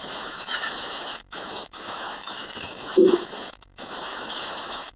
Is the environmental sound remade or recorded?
remade